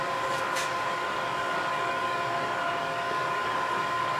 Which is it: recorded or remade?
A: remade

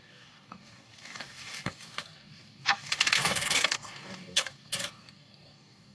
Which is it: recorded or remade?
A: remade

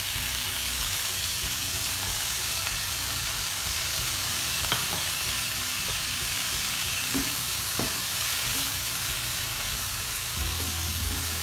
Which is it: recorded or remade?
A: remade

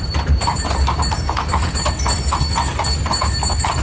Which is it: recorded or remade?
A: recorded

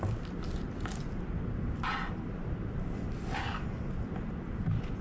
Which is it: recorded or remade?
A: recorded